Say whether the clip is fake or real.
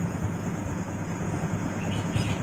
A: fake